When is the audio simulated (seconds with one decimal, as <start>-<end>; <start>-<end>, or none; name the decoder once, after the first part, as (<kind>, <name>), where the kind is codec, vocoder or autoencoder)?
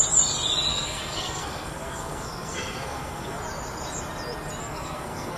0.7-3.4 (codec, SNAC); 4.6-5.4